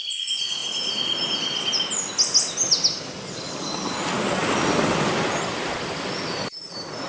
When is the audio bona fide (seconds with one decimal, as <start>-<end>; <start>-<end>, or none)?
0.0-7.1